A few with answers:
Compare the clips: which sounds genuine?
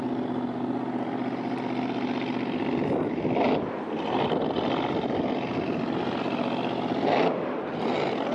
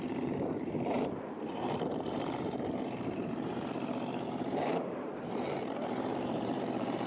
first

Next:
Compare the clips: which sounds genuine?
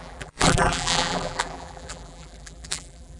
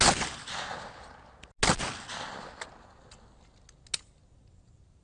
second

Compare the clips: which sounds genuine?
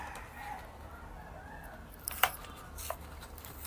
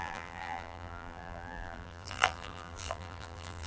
first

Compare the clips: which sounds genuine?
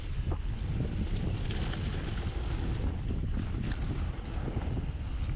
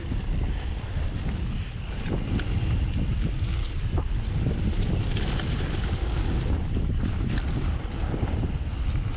first